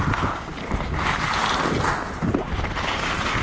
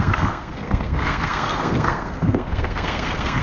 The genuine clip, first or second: first